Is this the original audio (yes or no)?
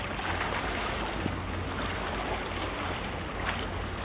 yes